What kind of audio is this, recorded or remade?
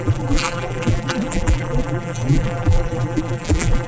remade